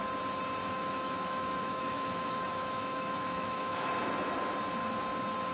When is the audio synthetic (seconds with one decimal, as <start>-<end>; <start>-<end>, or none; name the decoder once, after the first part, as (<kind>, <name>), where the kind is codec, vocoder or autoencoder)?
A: 0.6-3.9 (autoencoder, DAC-VAE)